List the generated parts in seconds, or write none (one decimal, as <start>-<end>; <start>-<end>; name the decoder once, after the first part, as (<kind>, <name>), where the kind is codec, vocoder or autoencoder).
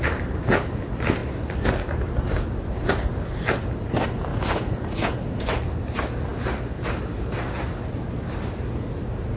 4.3-5.4 (vocoder, Vocos)